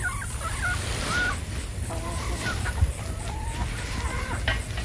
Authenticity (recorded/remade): recorded